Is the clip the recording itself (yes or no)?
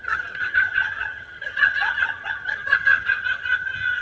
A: no